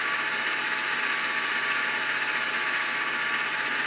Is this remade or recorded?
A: recorded